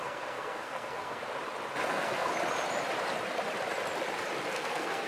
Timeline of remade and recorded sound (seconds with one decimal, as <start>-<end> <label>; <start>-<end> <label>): 0.0-1.2 remade; 1.2-1.9 recorded; 1.9-2.3 remade; 2.3-4.5 recorded; 4.5-5.1 remade